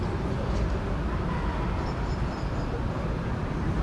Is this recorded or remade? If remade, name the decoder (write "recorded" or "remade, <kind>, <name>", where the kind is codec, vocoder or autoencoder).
recorded